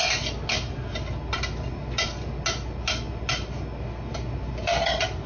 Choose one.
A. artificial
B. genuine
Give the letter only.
B